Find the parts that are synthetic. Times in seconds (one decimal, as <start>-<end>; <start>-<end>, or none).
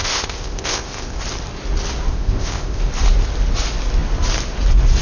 0.0-1.2; 2.1-2.8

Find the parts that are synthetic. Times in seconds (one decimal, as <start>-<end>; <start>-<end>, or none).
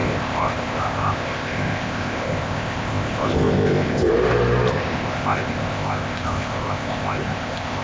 0.0-4.1; 4.7-7.8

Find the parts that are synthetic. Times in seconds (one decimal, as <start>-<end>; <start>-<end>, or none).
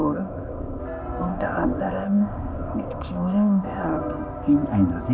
0.0-0.8; 1.3-4.0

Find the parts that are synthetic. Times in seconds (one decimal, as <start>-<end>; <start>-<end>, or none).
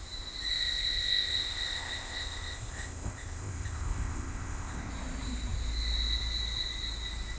0.5-4.9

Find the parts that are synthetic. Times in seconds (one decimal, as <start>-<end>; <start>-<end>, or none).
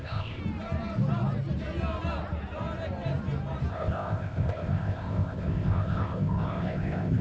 0.0-0.4; 3.7-7.2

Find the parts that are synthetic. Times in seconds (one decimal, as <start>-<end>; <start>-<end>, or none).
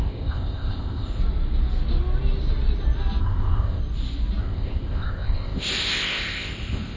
0.0-1.2; 3.2-3.8; 4.4-7.0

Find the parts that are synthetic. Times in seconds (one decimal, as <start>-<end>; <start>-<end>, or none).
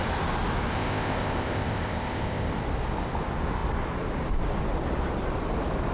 0.7-2.5